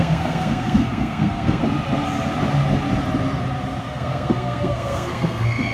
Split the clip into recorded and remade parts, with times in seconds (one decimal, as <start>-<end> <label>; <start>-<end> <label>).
0.0-1.6 remade; 1.6-3.8 recorded; 3.8-5.7 remade